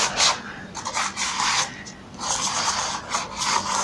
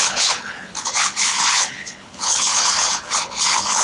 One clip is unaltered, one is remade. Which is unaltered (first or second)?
first